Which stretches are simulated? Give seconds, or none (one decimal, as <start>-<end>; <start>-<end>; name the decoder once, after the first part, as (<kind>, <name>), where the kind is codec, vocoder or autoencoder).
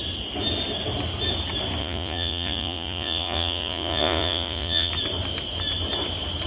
1.8-4.9 (vocoder, Vocos)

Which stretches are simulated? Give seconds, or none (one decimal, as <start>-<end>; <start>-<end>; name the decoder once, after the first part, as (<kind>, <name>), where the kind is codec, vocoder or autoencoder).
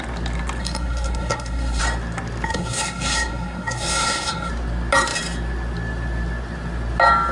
0.6-1.8 (codec, SNAC); 2.5-4.5